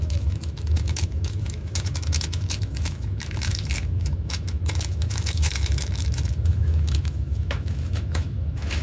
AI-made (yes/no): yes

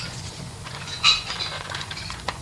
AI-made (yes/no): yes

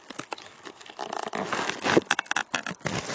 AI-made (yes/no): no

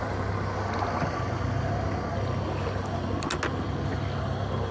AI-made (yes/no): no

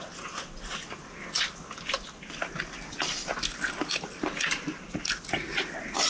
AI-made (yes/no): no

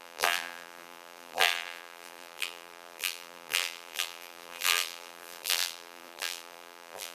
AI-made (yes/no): yes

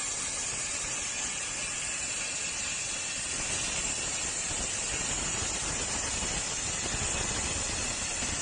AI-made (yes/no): no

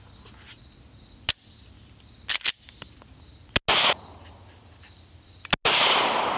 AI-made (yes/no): no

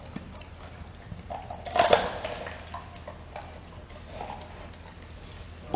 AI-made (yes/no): no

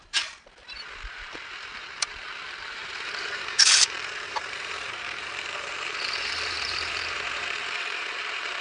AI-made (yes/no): yes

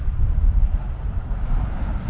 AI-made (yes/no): no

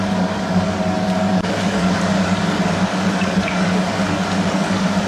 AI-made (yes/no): yes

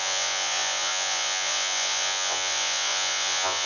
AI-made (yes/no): yes